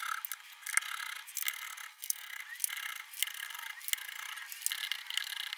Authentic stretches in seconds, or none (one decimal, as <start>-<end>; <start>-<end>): 0.0-1.9; 2.4-5.6